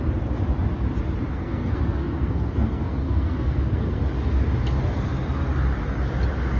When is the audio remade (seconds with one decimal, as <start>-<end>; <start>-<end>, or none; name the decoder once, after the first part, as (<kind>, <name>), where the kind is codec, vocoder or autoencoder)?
1.3-4.0 (codec, SNAC)